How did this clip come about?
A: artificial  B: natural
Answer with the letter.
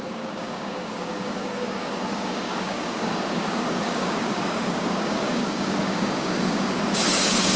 A